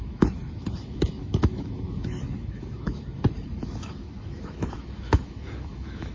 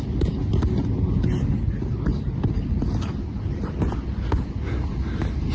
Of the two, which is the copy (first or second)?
first